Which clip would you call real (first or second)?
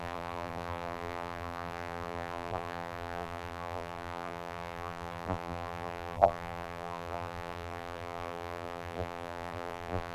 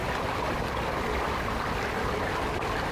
second